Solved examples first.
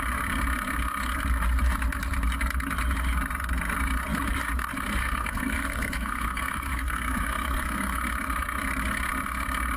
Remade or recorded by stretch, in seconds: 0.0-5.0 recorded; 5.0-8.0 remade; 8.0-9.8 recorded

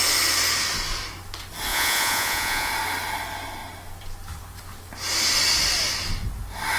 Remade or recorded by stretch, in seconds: 0.0-1.7 recorded; 1.7-2.7 remade; 2.7-6.8 recorded

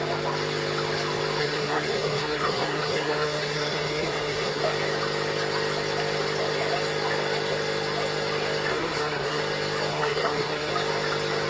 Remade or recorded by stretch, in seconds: 0.0-1.4 recorded; 1.4-4.6 remade; 4.6-8.7 recorded; 8.7-9.4 remade; 9.4-9.9 recorded; 9.9-10.7 remade; 10.7-11.5 recorded

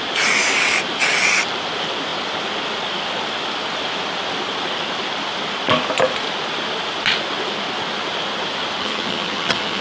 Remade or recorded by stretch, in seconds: 0.0-8.8 recorded; 8.8-9.8 remade

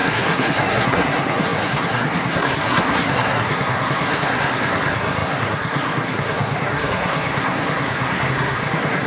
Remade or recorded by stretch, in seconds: 0.0-9.1 remade